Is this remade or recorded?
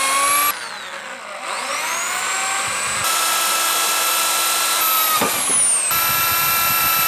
recorded